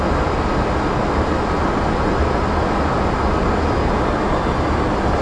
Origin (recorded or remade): recorded